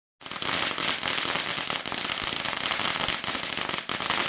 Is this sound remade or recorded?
recorded